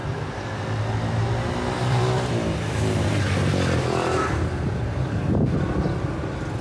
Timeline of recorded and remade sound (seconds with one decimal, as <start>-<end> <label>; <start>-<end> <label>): 0.0-3.2 remade; 3.2-6.6 recorded